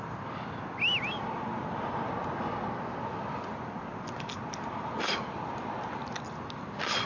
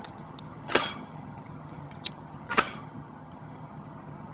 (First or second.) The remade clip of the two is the second